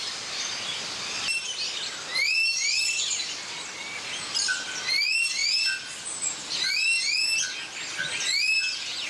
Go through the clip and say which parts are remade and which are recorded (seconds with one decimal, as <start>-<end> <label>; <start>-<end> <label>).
0.0-9.1 recorded